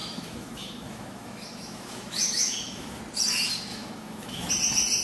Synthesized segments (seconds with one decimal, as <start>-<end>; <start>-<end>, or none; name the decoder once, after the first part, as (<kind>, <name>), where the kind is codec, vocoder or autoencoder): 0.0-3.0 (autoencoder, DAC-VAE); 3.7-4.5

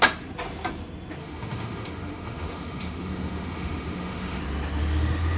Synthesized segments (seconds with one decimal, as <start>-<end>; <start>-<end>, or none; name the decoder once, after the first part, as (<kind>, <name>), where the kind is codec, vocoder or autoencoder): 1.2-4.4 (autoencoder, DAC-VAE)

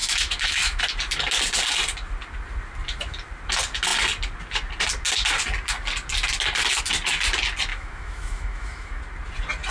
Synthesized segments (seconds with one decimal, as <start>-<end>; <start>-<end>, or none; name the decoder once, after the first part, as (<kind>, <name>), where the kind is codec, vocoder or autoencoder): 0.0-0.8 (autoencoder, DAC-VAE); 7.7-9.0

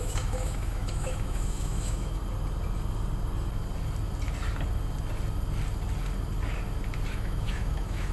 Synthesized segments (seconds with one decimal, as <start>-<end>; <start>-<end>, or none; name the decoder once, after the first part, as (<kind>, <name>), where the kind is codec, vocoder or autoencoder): 0.0-2.2 (autoencoder, DAC-VAE); 7.1-8.1

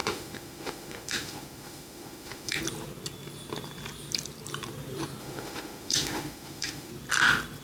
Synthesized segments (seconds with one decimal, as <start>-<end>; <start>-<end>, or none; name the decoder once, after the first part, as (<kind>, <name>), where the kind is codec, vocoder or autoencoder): 0.0-2.6 (autoencoder, DAC-VAE); 5.2-6.9

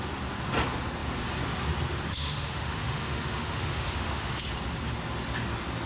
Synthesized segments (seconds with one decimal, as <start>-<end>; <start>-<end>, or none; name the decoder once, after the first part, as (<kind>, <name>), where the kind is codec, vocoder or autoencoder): 2.1-4.4 (autoencoder, DAC-VAE)

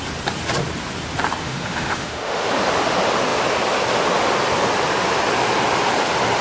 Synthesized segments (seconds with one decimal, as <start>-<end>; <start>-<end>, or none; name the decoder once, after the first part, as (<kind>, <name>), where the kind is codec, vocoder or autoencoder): 1.4-2.5 (autoencoder, DAC-VAE)

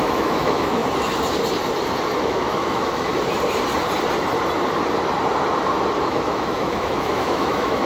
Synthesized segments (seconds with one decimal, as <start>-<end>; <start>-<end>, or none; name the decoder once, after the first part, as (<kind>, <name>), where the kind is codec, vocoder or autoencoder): 0.0-0.8 (autoencoder, DAC-VAE); 2.2-3.1; 6.0-7.9